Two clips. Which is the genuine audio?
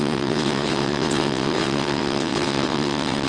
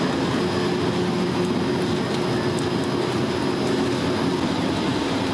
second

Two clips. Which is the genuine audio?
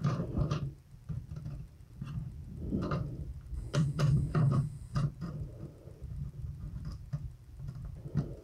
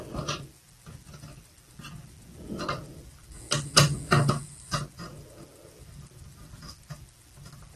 second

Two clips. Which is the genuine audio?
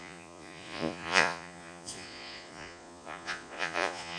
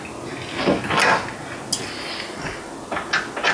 second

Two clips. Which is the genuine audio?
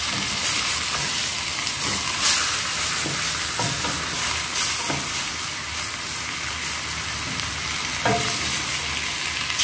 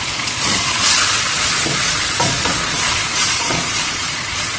first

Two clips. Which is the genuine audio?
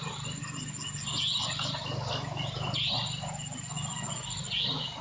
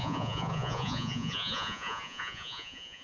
first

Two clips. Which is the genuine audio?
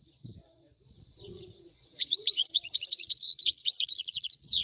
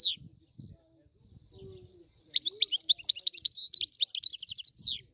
second